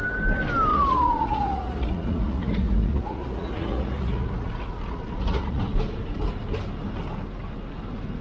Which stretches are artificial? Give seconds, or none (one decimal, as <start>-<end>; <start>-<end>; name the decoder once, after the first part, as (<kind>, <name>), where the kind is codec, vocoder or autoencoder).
0.7-5.6 (vocoder, Vocos)